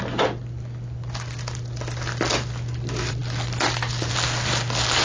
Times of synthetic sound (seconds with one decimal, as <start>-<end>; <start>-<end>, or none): none